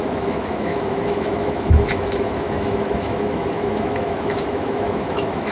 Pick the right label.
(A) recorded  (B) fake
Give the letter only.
B